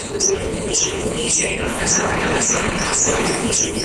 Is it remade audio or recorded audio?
remade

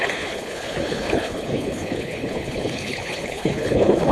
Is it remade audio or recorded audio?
remade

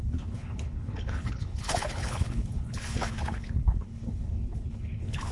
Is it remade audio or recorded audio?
remade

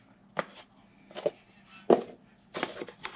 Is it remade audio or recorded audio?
recorded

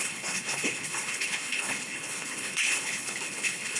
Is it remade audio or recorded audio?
remade